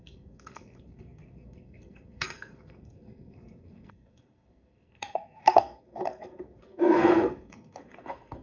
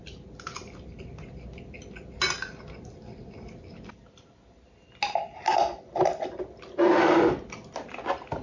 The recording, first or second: second